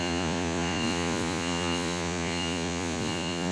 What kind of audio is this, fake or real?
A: fake